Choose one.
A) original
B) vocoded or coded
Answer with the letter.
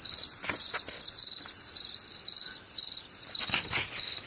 A